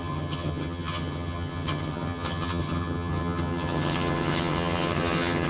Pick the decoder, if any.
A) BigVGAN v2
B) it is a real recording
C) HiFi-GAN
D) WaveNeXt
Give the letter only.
C